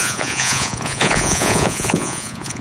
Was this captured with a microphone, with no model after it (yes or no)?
no